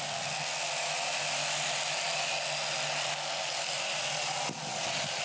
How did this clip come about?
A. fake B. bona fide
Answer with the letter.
B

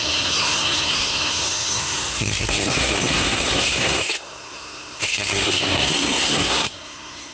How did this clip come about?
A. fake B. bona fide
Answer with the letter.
A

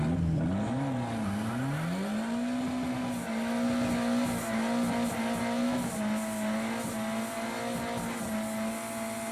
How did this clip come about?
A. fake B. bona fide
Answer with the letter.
B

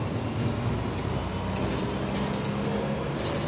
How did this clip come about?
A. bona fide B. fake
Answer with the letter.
A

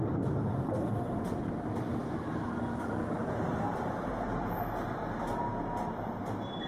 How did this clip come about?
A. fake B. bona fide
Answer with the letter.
B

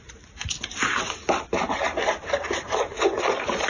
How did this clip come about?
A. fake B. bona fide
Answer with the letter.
B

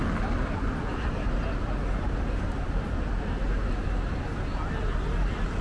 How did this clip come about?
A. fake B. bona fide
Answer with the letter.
B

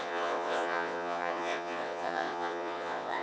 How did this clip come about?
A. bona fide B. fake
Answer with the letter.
B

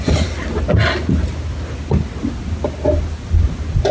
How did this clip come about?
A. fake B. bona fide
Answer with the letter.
B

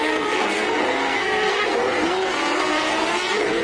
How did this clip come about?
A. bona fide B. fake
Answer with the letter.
B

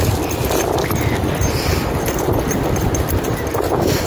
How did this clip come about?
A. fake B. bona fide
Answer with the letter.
B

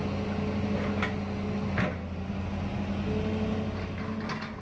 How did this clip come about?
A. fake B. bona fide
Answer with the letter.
B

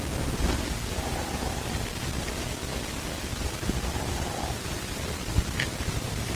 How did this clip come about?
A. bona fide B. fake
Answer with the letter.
B